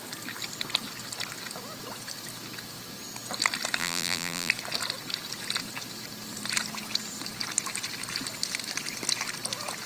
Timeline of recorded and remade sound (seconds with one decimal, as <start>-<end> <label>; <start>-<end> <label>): 0.0-3.8 recorded; 3.8-4.5 remade; 4.5-9.9 recorded